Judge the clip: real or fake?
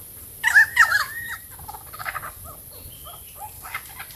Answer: fake